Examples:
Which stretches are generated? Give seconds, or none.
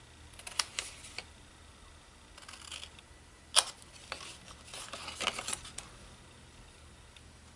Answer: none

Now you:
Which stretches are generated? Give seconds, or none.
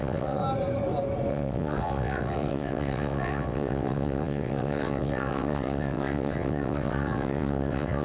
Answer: 0.0-0.4 (vocoder, WaveNeXt); 1.3-8.0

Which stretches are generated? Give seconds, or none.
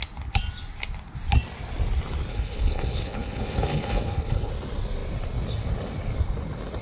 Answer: 2.3-4.5 (codec, HILCodec)